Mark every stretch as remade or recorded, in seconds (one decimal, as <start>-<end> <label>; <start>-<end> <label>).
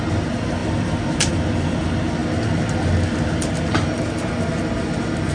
0.0-5.3 recorded